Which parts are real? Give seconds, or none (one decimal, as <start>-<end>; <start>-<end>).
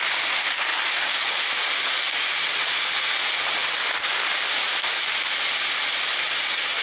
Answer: 0.0-6.8